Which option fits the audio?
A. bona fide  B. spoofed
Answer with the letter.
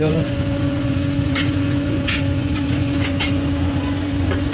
B